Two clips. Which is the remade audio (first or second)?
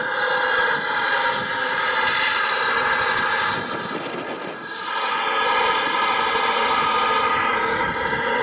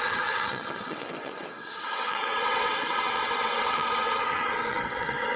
second